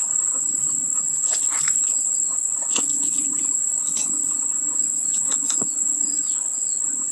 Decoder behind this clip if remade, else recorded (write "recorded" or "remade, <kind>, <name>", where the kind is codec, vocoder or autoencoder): remade, vocoder, Vocos